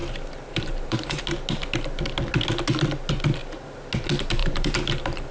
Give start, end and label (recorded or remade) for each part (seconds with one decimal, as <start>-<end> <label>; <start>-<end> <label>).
0.0-1.2 remade; 1.2-4.4 recorded; 4.4-5.3 remade